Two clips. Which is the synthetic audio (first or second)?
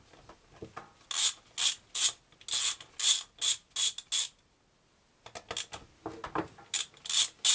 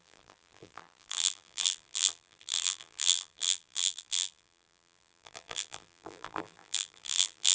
second